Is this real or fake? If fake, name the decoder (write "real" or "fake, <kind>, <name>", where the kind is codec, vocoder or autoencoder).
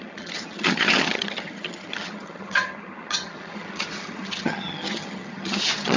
fake, vocoder, HiFi-GAN